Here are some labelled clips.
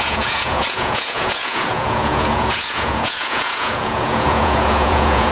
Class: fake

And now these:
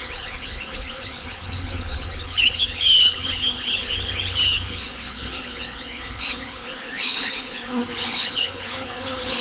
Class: fake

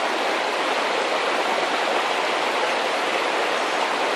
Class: real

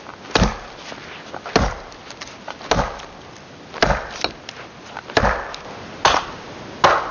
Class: real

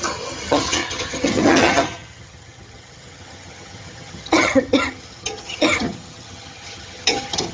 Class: fake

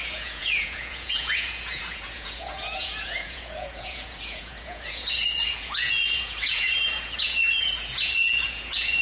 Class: fake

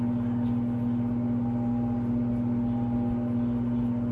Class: real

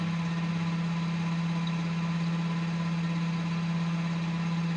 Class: real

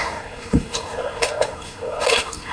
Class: fake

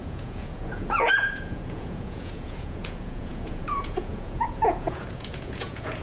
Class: fake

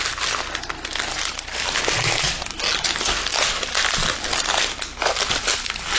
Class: real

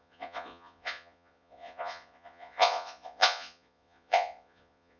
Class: fake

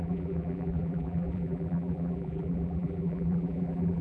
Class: fake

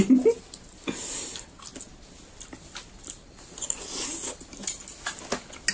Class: real